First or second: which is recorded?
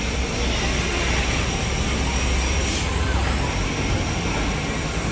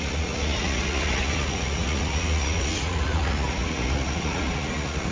first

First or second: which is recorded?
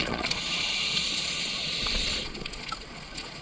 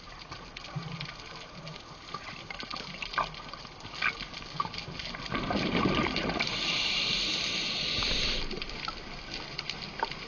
second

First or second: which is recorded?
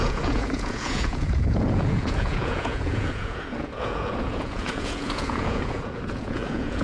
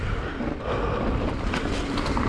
second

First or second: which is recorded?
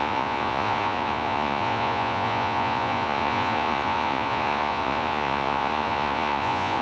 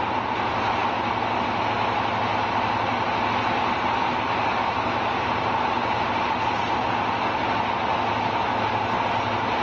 second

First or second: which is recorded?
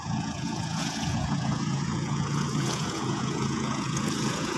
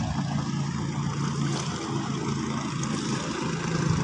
second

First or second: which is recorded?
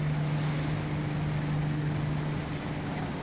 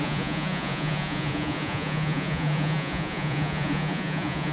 first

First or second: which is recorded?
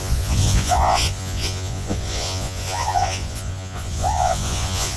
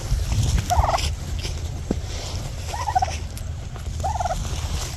second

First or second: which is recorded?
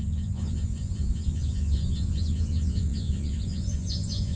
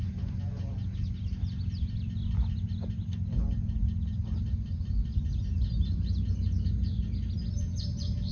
second